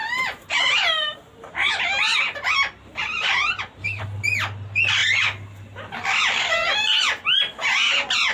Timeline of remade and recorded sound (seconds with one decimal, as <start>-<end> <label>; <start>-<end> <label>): 0.0-4.0 remade; 4.0-8.3 recorded